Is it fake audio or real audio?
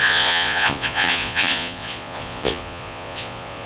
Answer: fake